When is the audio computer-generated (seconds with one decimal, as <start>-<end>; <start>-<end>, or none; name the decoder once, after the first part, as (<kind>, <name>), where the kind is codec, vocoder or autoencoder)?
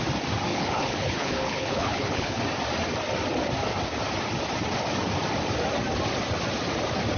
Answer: 0.5-2.4 (codec, HILCodec)